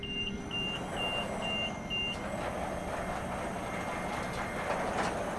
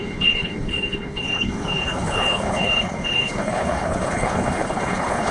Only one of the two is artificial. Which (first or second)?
second